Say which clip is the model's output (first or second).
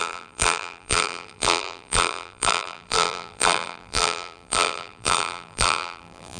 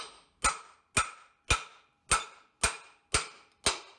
first